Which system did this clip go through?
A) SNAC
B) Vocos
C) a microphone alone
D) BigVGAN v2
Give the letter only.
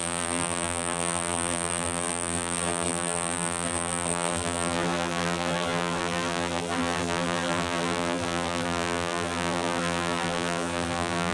D